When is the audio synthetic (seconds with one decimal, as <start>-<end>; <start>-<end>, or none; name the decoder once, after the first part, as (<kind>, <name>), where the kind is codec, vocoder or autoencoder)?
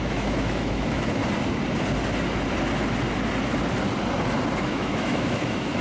0.0-1.2 (autoencoder, DAC-VAE); 4.7-5.8